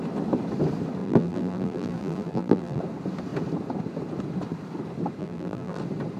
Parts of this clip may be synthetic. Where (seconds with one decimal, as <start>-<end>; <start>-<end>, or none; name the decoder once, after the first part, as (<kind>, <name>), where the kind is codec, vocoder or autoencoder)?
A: 1.0-2.8 (vocoder, BigVGAN v2); 5.2-5.8